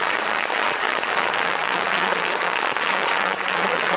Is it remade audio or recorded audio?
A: remade